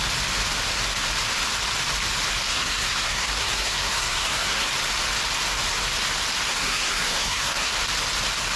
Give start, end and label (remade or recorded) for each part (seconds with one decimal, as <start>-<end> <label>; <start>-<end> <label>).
0.0-2.5 recorded; 2.5-4.7 remade; 4.7-6.5 recorded; 6.5-7.7 remade; 7.7-8.6 recorded

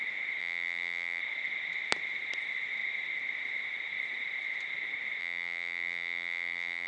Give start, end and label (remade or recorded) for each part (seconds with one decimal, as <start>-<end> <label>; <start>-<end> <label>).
0.0-0.4 recorded; 0.4-1.2 remade; 1.2-5.2 recorded; 5.2-6.9 remade